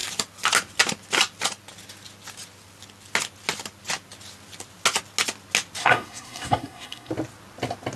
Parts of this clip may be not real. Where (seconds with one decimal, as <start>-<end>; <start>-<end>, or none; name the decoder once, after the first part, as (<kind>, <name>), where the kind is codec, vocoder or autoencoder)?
5.8-7.1 (codec, SNAC)

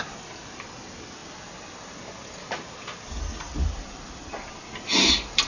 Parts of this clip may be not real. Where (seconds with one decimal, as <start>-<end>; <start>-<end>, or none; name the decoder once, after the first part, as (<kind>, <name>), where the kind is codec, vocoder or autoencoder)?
none